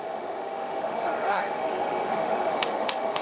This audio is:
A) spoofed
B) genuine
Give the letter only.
A